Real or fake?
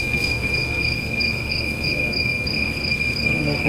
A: fake